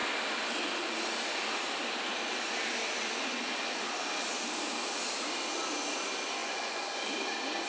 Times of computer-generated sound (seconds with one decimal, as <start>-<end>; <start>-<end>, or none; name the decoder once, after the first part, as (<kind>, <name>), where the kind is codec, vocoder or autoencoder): 6.4-7.1 (vocoder, Vocos)